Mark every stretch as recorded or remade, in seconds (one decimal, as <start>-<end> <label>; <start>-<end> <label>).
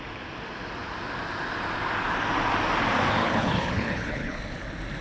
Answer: 0.0-3.2 recorded; 3.2-4.4 remade; 4.4-5.0 recorded